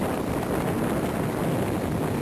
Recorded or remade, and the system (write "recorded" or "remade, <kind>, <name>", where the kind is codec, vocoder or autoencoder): recorded